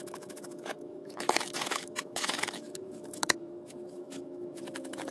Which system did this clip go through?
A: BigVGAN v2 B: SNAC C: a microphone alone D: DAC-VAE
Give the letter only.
D